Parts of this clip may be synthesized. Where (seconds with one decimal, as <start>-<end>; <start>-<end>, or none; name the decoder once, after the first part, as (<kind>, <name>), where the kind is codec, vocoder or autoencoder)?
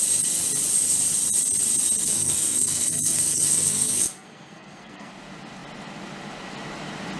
2.0-5.1 (codec, SNAC)